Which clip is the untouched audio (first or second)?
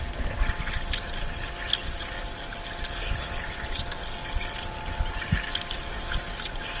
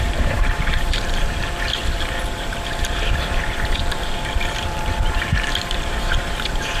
first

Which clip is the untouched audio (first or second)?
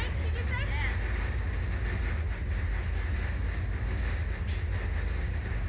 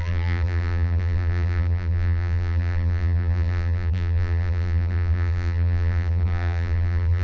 first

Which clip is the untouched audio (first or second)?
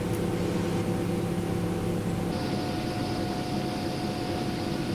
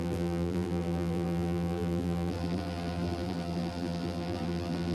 first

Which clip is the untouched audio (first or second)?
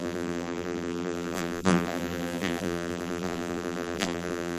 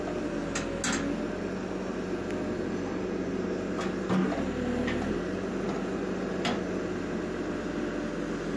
second